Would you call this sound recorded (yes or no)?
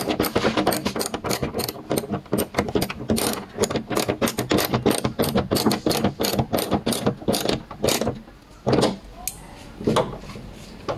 yes